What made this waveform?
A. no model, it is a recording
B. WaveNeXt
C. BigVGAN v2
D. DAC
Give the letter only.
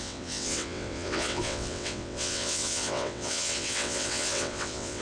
B